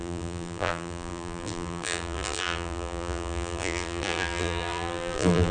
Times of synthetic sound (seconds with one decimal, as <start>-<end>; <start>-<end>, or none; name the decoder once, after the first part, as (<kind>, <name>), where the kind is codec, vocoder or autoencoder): 0.0-5.5 (vocoder, BigVGAN v2)